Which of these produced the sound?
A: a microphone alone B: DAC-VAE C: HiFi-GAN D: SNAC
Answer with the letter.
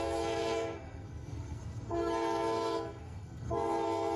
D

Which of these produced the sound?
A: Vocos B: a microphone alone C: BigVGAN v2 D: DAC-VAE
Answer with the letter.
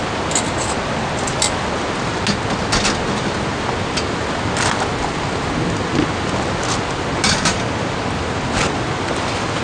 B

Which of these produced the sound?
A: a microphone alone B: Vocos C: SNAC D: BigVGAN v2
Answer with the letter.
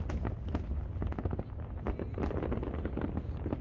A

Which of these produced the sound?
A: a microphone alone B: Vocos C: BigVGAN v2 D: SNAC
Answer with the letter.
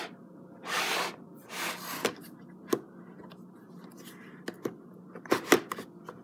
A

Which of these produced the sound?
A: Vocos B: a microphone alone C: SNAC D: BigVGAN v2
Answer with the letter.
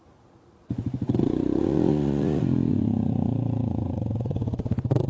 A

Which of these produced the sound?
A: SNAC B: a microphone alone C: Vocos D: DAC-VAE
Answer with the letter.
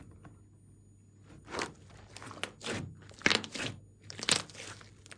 B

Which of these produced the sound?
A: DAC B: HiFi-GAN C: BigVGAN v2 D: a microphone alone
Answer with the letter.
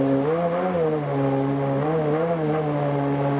D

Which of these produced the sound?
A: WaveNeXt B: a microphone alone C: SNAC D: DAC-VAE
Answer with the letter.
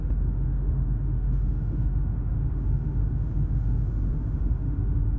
D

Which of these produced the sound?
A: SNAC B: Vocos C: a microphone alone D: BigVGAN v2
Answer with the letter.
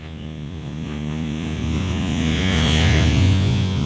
B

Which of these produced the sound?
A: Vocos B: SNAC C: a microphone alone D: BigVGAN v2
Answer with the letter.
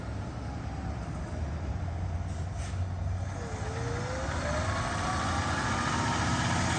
C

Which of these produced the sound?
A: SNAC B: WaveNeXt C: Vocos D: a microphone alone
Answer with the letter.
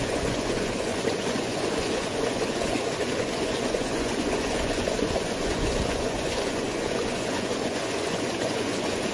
C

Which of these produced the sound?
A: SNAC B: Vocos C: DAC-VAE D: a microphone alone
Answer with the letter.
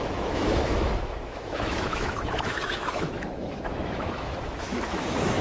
C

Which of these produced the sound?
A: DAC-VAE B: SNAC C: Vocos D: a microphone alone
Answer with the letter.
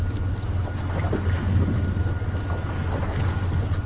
D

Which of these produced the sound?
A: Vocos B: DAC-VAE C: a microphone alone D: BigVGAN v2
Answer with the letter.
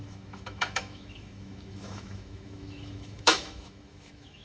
B